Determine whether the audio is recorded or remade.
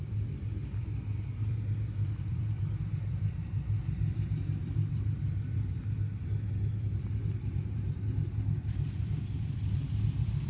remade